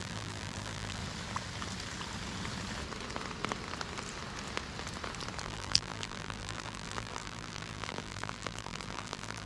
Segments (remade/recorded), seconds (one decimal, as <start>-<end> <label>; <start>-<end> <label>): 0.0-1.0 remade; 1.0-5.4 recorded; 5.4-9.5 remade